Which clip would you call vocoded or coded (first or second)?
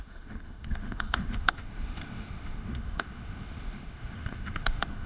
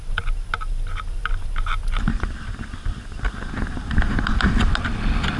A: first